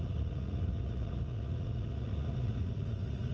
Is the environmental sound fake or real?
fake